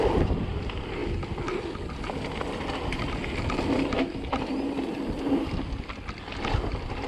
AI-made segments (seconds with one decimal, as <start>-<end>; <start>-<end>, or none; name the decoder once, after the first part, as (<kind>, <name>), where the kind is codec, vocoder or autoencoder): none